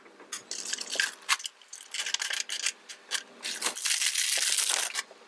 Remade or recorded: recorded